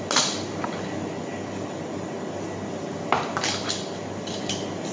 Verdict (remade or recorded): recorded